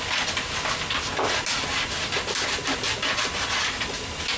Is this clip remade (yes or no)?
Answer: no